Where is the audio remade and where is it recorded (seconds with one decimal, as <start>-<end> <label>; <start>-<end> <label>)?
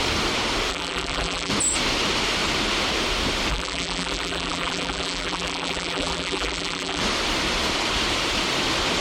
0.0-0.7 recorded; 0.7-1.5 remade; 1.5-3.5 recorded; 3.5-7.0 remade; 7.0-9.0 recorded